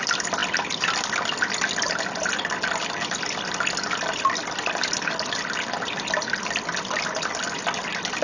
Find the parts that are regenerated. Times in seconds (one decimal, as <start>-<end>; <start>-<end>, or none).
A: none